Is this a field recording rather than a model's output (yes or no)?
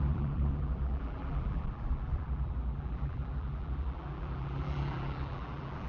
no